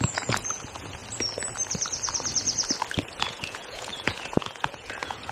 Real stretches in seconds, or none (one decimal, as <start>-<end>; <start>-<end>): 1.0-3.1